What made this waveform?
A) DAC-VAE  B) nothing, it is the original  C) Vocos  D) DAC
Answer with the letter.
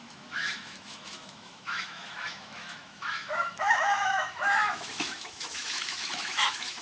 A